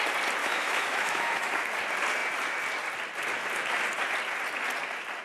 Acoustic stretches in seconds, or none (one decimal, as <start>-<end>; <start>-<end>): 0.0-0.4; 1.5-5.2